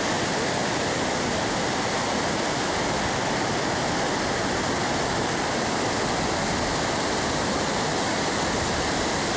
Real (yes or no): yes